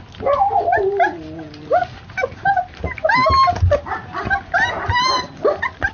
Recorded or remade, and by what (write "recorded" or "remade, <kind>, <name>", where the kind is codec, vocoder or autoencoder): recorded